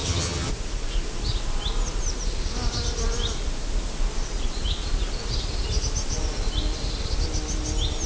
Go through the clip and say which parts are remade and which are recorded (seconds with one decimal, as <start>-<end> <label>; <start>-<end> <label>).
0.0-0.5 remade; 0.5-8.1 recorded